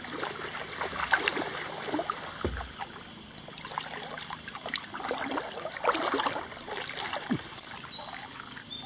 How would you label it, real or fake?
real